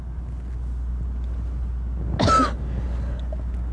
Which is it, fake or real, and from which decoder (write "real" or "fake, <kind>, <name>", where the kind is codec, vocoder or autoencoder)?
real